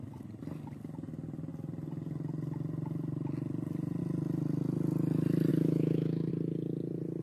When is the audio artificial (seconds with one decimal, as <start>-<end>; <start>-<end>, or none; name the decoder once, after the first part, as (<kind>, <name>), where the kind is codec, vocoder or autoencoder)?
5.5-6.3 (autoencoder, DAC-VAE)